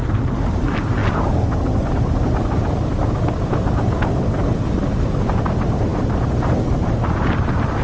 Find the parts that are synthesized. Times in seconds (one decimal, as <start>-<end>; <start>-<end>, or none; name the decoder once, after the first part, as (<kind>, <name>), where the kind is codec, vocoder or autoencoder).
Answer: none